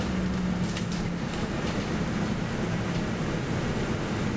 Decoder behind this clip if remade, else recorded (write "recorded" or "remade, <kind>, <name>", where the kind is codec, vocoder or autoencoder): recorded